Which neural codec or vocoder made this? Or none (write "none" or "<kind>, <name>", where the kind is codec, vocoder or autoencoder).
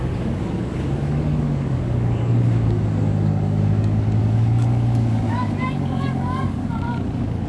codec, DAC